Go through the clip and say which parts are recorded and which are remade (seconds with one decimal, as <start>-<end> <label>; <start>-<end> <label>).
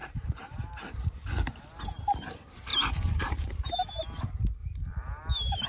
0.0-0.7 remade; 0.7-2.7 recorded; 2.7-3.5 remade; 3.5-4.6 recorded; 4.6-5.3 remade; 5.3-5.7 recorded